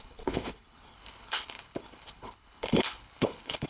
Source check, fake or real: fake